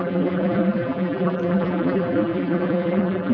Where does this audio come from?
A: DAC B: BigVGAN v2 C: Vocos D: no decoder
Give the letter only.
B